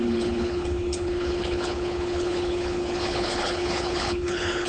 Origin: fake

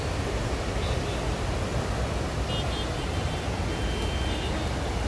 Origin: real